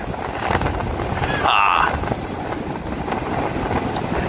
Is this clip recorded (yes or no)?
yes